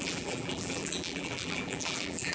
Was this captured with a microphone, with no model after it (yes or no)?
no